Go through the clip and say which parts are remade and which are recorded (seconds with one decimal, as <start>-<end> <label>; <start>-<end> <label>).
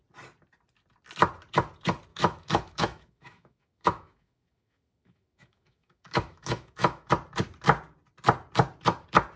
0.0-2.1 recorded; 2.1-7.1 remade; 7.1-9.4 recorded